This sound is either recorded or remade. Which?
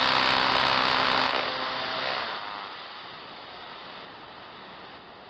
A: recorded